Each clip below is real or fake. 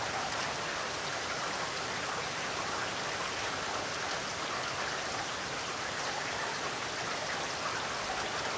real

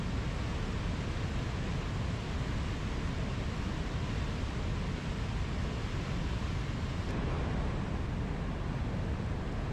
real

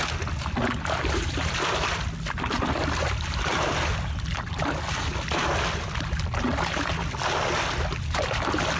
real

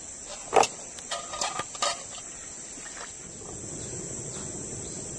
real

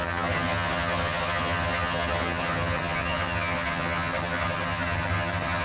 fake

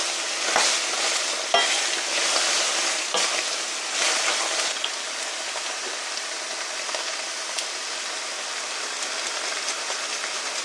real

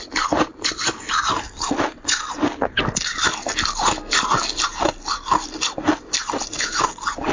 real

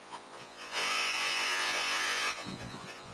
fake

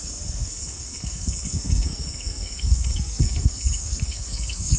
fake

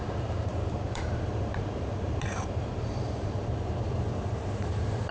fake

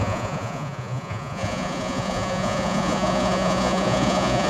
fake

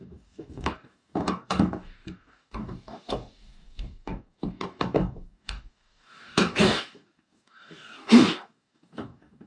fake